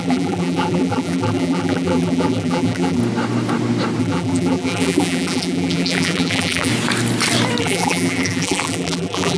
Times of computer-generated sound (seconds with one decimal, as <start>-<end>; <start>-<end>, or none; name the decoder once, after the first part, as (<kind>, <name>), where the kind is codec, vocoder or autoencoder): 0.0-3.0 (vocoder, BigVGAN v2); 4.0-6.7; 7.6-9.4